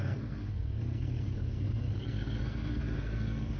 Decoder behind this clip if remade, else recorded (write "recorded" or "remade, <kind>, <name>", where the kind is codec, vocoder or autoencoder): remade, codec, SNAC